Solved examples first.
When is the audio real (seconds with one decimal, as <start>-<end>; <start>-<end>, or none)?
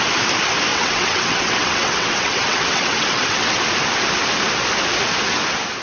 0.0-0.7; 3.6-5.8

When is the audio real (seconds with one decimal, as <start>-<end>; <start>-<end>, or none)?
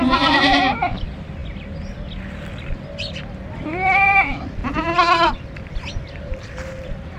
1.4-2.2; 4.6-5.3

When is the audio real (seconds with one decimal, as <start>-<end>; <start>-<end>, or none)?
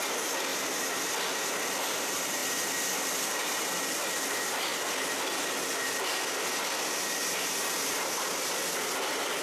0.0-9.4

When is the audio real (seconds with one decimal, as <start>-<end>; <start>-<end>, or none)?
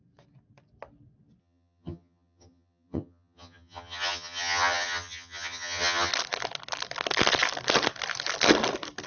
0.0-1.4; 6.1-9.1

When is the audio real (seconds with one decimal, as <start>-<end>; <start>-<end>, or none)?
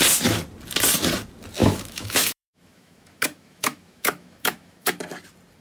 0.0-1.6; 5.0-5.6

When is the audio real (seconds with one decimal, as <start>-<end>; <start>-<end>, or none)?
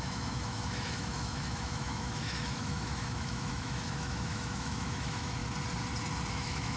5.4-6.3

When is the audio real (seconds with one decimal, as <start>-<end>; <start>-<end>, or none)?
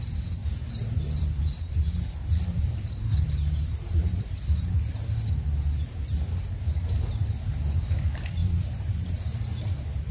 0.0-0.4; 4.6-8.4; 9.7-10.1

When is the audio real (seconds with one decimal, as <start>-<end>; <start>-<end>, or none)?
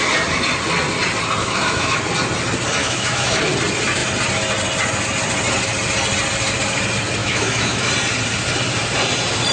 0.0-1.4; 2.0-2.8; 3.4-7.2; 7.9-9.5